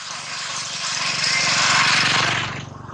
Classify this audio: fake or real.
real